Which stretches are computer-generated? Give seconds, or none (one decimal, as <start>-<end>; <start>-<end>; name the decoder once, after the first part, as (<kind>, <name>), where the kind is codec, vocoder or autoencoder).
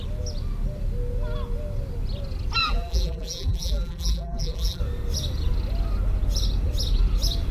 2.6-4.8 (vocoder, BigVGAN v2)